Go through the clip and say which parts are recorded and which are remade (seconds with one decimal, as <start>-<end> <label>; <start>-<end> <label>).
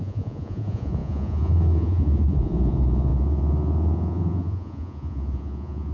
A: 0.0-5.9 remade